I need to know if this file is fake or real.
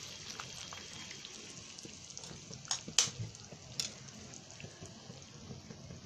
real